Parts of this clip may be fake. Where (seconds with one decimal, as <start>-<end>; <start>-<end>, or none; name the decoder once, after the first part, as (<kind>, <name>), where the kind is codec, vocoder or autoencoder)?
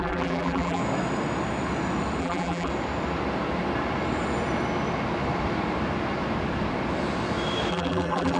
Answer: 0.0-0.8 (vocoder, BigVGAN v2); 2.2-2.7; 7.7-8.4